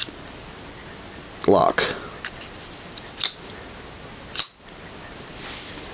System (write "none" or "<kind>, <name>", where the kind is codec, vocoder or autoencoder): none